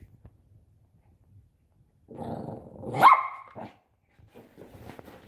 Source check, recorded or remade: recorded